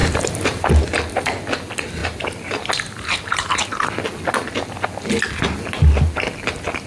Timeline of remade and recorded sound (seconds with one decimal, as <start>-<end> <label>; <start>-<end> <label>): 0.0-0.7 remade; 0.7-2.0 recorded; 2.0-3.9 remade; 3.9-6.9 recorded